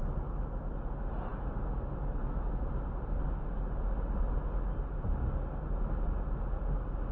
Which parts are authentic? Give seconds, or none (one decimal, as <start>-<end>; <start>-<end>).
0.0-7.1